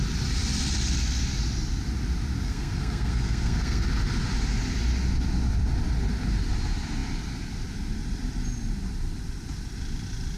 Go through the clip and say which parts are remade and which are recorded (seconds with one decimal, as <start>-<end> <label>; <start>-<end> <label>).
0.0-2.4 recorded; 2.4-3.8 remade; 3.8-10.4 recorded